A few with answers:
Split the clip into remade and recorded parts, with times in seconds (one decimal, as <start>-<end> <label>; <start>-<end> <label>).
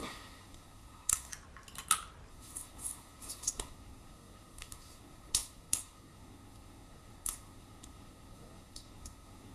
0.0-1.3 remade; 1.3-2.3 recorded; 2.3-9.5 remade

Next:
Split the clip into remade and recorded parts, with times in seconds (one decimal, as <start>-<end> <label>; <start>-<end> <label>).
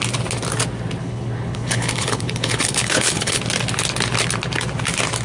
0.0-1.0 recorded; 1.0-3.4 remade; 3.4-5.2 recorded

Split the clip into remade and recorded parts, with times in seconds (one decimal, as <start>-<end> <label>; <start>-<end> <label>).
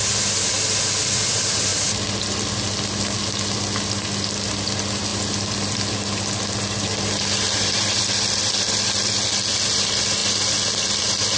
0.0-11.4 recorded